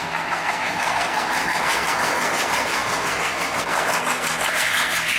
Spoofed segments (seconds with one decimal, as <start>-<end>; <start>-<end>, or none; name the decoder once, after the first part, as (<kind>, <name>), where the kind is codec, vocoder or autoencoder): 0.0-5.2 (codec, SNAC)